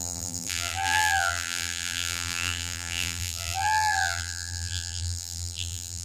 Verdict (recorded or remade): remade